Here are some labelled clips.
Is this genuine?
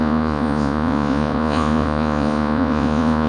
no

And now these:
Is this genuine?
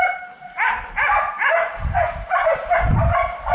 no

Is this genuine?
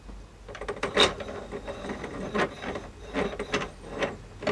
yes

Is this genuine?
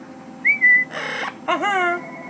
yes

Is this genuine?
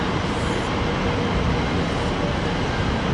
yes